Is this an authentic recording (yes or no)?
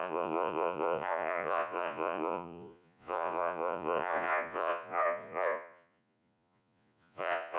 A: no